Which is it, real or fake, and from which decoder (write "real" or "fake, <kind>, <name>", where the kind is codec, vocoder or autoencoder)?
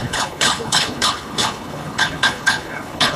fake, codec, HILCodec